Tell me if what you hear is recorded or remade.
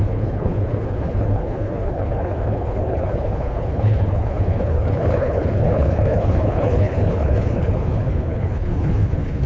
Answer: remade